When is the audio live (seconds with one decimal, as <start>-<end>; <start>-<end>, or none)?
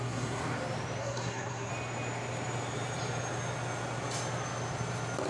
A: 0.4-1.0; 1.7-5.3